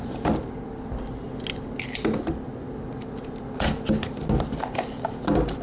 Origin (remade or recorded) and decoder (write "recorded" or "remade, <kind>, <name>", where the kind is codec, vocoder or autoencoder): recorded